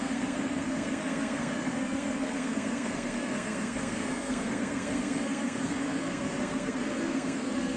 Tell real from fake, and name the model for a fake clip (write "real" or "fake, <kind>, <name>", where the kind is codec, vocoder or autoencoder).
fake, codec, SNAC